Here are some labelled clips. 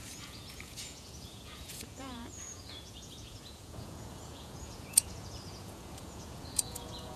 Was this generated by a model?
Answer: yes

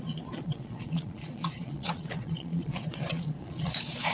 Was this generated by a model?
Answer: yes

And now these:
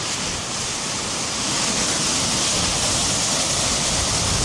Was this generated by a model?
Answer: no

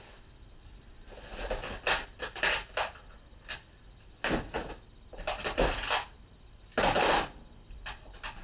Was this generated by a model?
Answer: no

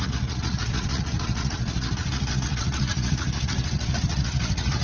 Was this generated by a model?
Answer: yes